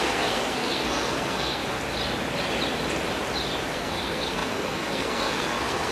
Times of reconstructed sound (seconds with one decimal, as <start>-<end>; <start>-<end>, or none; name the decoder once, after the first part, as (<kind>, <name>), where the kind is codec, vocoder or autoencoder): 0.0-1.6 (codec, SNAC); 3.7-5.9